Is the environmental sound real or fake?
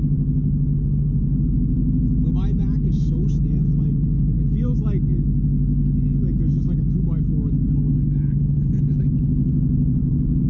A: real